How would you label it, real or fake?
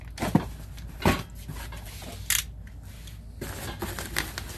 real